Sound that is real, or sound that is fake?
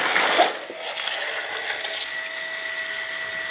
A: real